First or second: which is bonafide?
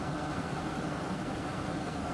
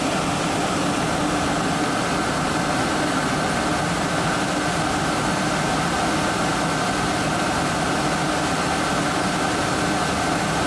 second